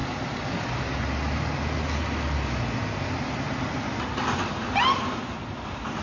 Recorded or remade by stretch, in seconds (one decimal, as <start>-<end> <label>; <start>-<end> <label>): 0.0-6.0 recorded